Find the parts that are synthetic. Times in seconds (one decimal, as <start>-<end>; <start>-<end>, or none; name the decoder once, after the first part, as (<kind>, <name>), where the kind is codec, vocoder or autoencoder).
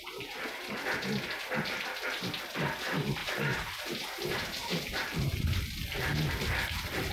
3.2-5.4 (vocoder, BigVGAN v2)